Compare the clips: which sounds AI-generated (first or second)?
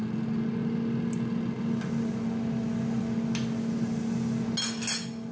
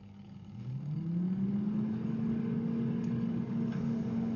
second